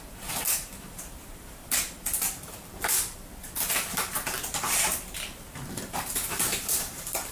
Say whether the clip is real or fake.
fake